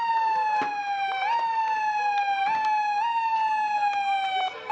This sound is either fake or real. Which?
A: real